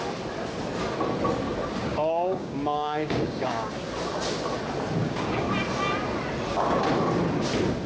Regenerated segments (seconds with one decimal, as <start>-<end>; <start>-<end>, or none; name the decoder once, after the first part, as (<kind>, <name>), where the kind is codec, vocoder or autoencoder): 1.8-3.7 (codec, DAC); 5.0-5.5